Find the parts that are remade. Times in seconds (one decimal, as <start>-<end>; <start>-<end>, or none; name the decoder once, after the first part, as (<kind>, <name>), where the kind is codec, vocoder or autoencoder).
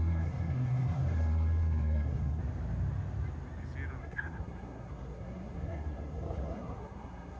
0.0-2.4 (codec, SNAC); 4.0-7.4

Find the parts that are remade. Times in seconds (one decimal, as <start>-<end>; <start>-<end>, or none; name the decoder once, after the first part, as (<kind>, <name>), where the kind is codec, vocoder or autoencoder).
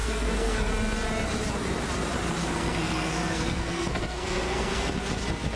0.0-0.7 (codec, SNAC); 2.4-5.0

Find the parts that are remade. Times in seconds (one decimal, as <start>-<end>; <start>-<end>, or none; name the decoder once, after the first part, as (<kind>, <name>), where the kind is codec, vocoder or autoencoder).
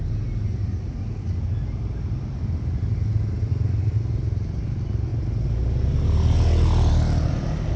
none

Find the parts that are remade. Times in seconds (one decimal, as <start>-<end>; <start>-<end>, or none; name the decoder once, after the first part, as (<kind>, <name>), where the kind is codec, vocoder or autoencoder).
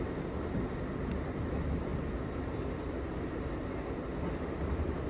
none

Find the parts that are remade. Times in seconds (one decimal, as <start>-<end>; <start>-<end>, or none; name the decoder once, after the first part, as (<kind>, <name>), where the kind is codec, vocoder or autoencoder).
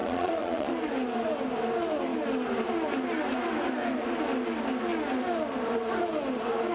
0.0-0.7 (vocoder, Vocos)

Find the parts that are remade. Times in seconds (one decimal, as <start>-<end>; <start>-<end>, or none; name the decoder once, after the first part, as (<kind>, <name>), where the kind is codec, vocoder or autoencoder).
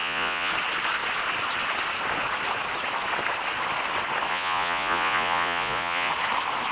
0.0-0.5 (vocoder, Vocos); 4.3-6.1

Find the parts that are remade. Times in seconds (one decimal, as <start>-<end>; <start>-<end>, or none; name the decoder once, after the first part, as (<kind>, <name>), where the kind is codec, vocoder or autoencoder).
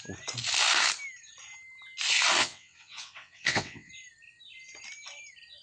2.4-3.9 (vocoder, WaveNeXt)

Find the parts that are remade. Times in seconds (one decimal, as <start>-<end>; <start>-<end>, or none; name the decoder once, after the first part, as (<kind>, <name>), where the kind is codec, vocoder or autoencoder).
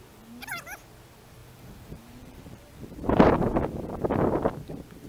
1.4-3.6 (vocoder, BigVGAN v2)